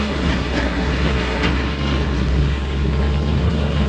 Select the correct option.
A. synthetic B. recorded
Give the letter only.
A